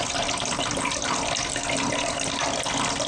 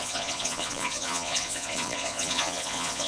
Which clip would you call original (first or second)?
first